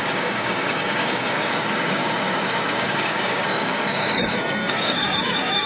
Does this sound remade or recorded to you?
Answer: remade